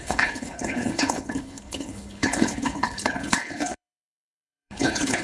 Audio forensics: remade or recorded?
remade